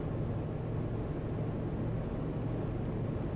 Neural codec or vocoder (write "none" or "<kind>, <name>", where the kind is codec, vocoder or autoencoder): none